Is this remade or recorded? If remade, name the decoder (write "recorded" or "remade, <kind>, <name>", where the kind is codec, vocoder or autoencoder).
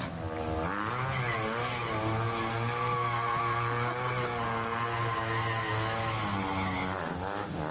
recorded